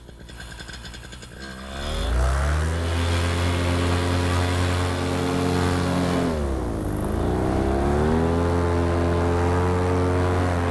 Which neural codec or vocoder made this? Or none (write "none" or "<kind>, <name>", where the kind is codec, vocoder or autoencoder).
none